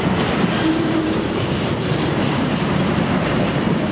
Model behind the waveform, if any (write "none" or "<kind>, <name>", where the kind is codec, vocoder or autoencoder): vocoder, BigVGAN v2